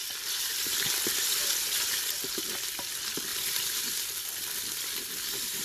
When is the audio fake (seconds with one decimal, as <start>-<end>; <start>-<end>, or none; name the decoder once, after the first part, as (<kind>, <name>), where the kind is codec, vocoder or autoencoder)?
none